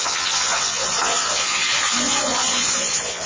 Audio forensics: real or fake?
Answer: fake